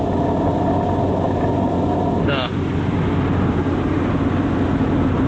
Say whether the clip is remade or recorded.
recorded